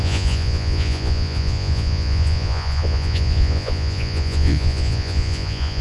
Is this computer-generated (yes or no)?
yes